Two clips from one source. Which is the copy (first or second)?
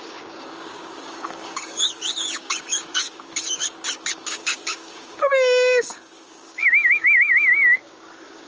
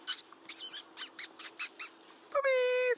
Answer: first